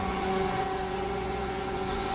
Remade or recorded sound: remade